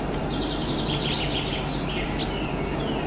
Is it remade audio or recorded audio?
recorded